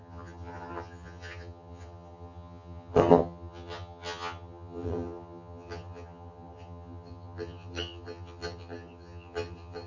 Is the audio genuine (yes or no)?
no